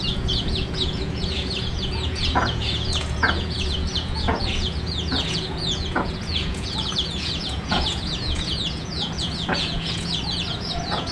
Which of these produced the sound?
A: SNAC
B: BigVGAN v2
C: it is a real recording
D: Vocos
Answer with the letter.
D